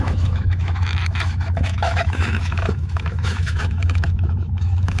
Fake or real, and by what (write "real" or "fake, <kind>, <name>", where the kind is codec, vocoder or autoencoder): fake, autoencoder, DAC-VAE